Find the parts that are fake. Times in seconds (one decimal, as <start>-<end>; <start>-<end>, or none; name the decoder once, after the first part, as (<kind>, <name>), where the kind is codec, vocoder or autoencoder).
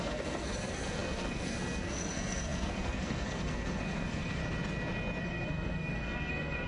0.0-4.4 (codec, SNAC); 5.2-6.7